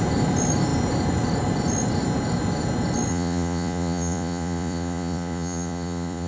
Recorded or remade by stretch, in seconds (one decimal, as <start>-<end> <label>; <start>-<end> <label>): 0.0-3.1 recorded; 3.1-6.3 remade